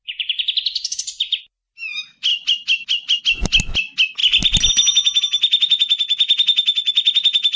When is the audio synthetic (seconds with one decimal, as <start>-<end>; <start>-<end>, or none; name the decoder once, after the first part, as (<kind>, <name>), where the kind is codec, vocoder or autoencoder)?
none